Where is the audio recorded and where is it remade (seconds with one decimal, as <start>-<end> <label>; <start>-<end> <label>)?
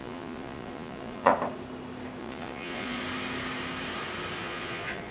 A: 0.0-1.3 remade; 1.3-2.2 recorded; 2.2-3.0 remade; 3.0-4.4 recorded; 4.4-5.1 remade